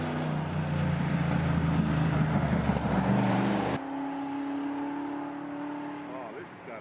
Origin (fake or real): real